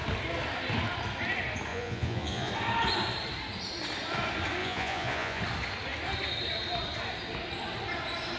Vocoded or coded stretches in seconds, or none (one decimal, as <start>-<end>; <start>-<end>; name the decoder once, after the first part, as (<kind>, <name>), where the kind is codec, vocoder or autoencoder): 1.7-2.5 (vocoder, Vocos); 4.6-5.4